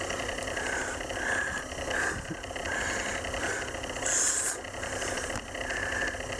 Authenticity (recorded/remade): recorded